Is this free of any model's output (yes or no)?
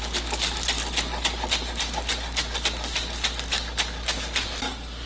yes